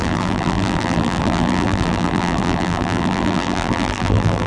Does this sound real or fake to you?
fake